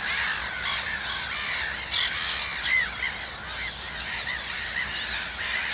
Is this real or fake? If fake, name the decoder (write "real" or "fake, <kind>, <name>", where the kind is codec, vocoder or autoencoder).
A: real